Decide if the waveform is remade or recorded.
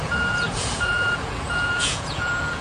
remade